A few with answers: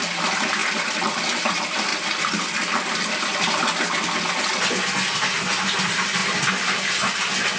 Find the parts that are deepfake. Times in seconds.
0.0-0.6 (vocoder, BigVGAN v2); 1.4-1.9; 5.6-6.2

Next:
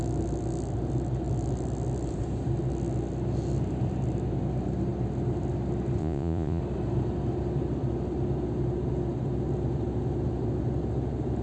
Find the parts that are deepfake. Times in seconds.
6.0-6.6 (vocoder, Vocos)

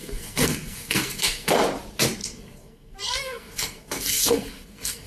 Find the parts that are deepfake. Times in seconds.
0.0-1.6 (codec, SNAC); 2.2-5.1

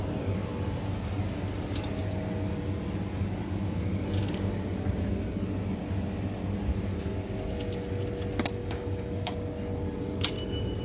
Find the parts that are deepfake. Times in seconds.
8.6-9.3 (codec, DAC)

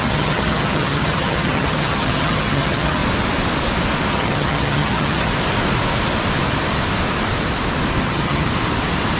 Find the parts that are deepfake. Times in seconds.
0.0-3.0 (vocoder, HiFi-GAN); 4.1-5.3; 8.0-8.5

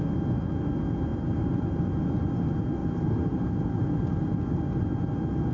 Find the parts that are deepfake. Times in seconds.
1.1-1.9 (vocoder, BigVGAN v2); 2.8-4.8

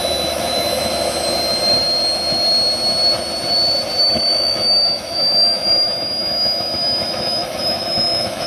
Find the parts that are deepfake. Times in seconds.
0.0-0.9 (autoencoder, DAC-VAE); 4.0-8.5